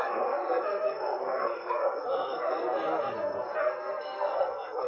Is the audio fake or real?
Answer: fake